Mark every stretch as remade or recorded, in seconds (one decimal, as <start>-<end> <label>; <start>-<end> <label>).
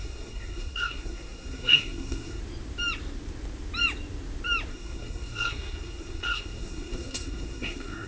0.0-2.4 remade; 2.4-4.7 recorded; 4.7-8.1 remade